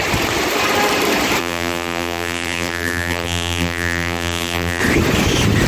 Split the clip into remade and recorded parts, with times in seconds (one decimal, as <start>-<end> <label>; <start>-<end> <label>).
0.0-1.4 recorded; 1.4-4.8 remade; 4.8-5.7 recorded